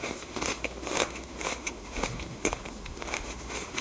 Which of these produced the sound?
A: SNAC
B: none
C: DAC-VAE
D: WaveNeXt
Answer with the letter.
C